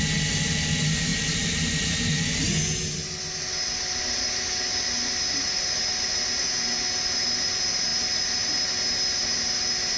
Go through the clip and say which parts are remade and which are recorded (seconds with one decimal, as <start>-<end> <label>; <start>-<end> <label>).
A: 0.0-10.0 recorded